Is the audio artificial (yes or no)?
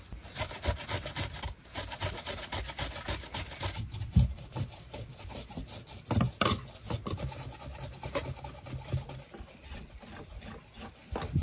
no